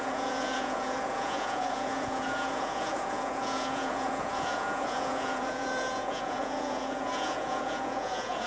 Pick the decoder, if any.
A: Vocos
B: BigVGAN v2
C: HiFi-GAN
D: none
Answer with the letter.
A